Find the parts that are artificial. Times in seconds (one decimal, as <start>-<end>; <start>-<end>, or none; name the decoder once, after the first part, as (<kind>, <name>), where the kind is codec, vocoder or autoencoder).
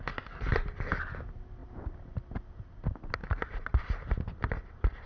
none